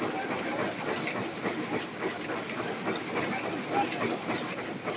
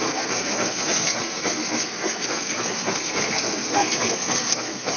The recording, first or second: first